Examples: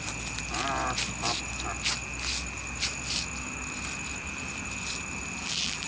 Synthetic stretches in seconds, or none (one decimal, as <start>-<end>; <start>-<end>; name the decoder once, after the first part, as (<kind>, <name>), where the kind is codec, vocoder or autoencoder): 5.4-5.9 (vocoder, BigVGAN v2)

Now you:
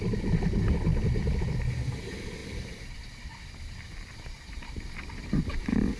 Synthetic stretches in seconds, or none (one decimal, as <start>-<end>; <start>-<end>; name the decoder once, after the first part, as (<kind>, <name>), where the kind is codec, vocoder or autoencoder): 0.9-1.4 (vocoder, BigVGAN v2); 2.4-6.0

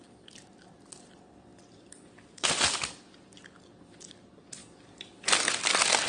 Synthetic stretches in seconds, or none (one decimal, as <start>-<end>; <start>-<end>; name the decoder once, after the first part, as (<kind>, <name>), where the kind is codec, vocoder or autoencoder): 4.6-6.1 (vocoder, BigVGAN v2)

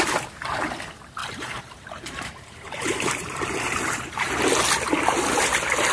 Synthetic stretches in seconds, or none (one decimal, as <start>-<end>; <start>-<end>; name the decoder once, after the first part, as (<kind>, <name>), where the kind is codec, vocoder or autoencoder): 1.2-4.3 (vocoder, BigVGAN v2)

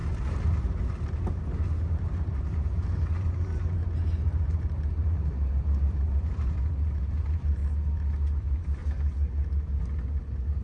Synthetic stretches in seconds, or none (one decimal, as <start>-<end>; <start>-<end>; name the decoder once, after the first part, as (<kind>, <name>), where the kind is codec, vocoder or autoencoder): 0.0-7.6 (vocoder, BigVGAN v2); 8.4-8.8; 10.2-10.6

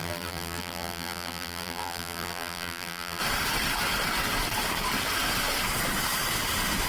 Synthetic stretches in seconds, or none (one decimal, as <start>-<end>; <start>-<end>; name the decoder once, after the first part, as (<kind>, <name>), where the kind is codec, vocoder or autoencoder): 0.0-3.2 (vocoder, BigVGAN v2)